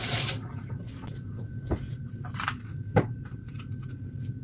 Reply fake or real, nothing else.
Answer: fake